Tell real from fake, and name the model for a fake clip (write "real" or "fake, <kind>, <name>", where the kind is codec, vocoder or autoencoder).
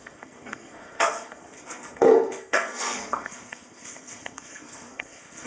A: fake, codec, SNAC